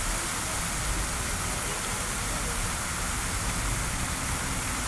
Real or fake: real